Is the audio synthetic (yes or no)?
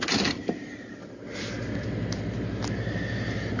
no